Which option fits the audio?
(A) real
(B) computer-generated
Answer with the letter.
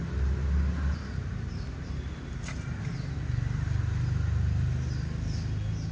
A